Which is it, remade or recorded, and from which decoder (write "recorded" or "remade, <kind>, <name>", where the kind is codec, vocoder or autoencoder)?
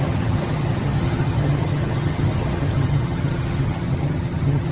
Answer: remade, vocoder, HiFi-GAN